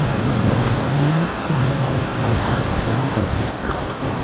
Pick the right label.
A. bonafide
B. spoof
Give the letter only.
B